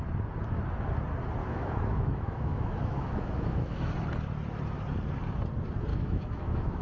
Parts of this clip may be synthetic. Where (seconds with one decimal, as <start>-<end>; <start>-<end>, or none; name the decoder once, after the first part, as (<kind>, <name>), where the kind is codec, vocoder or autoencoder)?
1.4-3.8 (autoencoder, DAC-VAE); 5.9-6.8